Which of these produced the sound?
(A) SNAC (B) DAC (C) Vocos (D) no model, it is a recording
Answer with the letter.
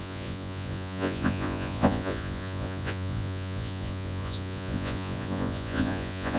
C